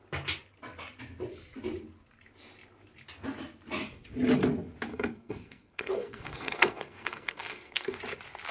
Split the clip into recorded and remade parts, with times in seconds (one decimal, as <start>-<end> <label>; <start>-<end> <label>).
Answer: 0.0-4.9 recorded; 4.9-8.0 remade; 8.0-8.5 recorded